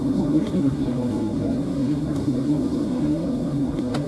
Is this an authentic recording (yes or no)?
no